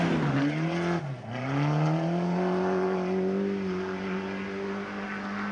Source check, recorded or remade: recorded